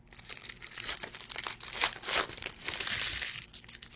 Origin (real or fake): real